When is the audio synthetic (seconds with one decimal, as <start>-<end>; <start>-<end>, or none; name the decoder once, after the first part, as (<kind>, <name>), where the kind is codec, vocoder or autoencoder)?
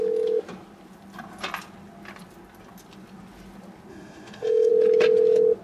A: 3.9-4.7 (autoencoder, DAC-VAE)